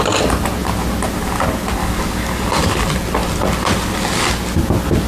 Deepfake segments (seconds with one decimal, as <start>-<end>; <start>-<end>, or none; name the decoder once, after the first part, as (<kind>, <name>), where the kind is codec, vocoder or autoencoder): 1.8-2.8 (codec, DAC)